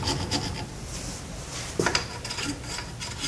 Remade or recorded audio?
recorded